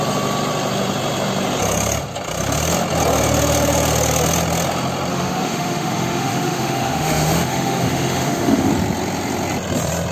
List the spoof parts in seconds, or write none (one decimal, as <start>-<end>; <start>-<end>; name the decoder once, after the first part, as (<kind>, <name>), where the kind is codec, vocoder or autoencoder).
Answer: 5.1-8.7 (autoencoder, DAC-VAE)